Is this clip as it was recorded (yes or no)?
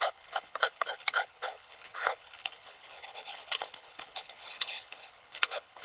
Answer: no